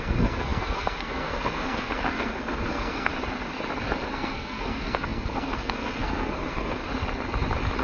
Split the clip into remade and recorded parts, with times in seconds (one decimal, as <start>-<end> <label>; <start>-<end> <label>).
0.0-3.1 remade; 3.1-4.1 recorded; 4.1-6.8 remade; 6.8-7.8 recorded